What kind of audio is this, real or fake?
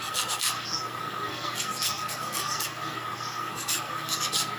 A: fake